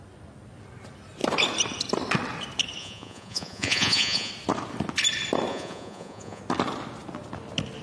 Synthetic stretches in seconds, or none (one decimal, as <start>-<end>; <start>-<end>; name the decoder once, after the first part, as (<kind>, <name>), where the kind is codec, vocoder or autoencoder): 2.8-4.3 (vocoder, Vocos); 5.5-6.4